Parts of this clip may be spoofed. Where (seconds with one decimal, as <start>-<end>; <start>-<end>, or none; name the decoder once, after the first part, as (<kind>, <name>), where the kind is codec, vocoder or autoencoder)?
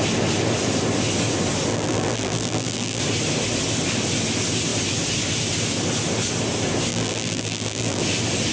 1.7-3.0 (vocoder, BigVGAN v2); 6.9-8.0